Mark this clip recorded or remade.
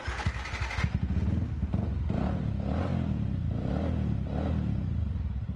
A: recorded